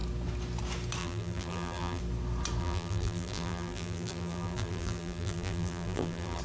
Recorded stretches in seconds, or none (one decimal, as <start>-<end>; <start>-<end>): 0.0-1.0; 2.0-2.6